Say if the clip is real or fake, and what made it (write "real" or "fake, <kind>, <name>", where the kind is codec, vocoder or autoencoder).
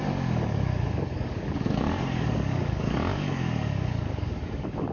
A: fake, codec, DAC